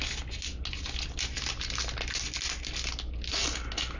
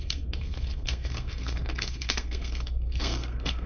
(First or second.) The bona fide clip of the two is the first